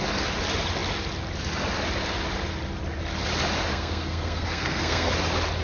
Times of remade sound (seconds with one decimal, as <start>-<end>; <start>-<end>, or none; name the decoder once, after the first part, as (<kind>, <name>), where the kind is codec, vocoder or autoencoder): 3.7-5.1 (codec, SNAC)